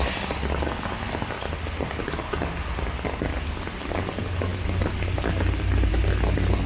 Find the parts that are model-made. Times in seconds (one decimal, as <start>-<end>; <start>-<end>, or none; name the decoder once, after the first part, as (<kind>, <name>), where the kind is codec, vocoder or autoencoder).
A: none